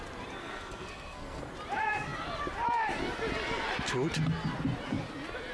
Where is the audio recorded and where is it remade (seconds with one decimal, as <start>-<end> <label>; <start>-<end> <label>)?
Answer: 0.0-0.4 recorded; 0.4-1.5 remade; 1.5-5.5 recorded